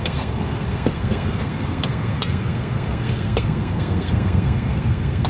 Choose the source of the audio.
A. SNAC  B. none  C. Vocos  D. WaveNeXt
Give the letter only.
A